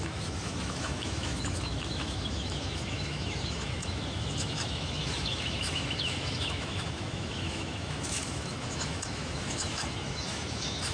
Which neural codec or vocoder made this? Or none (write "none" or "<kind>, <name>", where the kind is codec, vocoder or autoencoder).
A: autoencoder, DAC-VAE